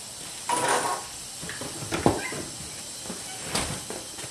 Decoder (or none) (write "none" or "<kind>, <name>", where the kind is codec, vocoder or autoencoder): none